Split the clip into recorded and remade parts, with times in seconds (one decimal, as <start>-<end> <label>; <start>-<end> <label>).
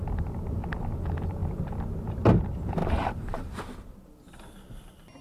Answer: 0.0-2.8 recorded; 2.8-3.6 remade; 3.6-5.2 recorded